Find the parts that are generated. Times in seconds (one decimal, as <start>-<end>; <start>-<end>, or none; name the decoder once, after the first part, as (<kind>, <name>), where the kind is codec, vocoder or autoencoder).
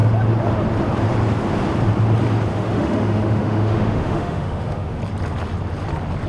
2.5-5.0 (autoencoder, DAC-VAE)